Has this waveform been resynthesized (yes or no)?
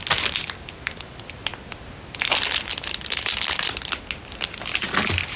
no